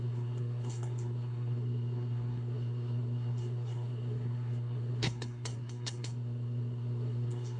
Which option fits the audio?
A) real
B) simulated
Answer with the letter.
B